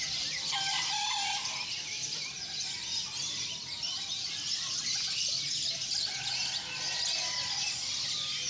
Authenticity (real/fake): real